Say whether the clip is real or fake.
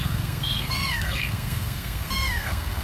fake